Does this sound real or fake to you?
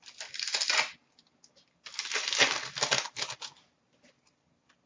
real